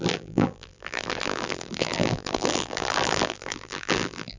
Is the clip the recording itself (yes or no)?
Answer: no